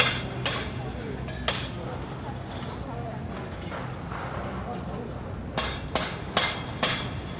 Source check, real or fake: real